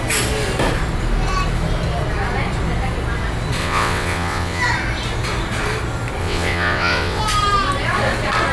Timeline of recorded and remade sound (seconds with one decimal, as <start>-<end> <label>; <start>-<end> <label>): 0.0-3.6 recorded; 3.6-4.6 remade; 4.6-6.2 recorded; 6.2-7.2 remade; 7.2-8.5 recorded